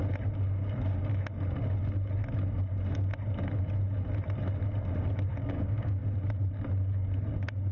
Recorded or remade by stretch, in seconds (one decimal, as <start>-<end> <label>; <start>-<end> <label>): 0.0-5.3 recorded; 5.3-6.0 remade; 6.0-7.7 recorded